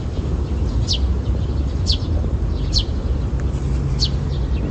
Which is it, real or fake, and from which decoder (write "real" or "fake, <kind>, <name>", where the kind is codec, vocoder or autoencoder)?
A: real